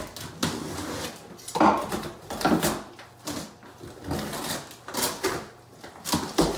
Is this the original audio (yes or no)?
yes